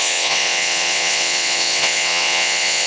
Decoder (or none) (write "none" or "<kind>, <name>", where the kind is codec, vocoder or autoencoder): vocoder, WaveNeXt